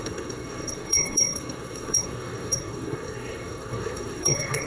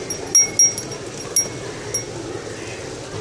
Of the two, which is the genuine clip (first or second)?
second